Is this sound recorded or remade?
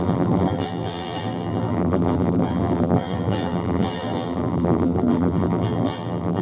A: remade